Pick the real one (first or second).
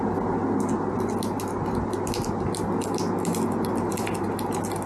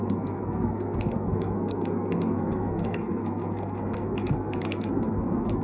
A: first